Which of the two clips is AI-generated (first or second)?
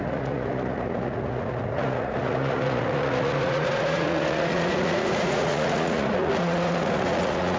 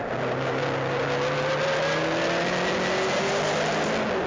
first